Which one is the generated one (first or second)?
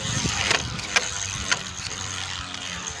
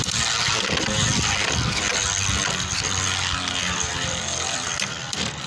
first